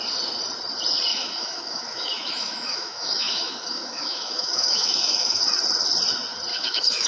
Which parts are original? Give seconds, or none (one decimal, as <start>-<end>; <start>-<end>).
0.0-1.1; 5.4-6.5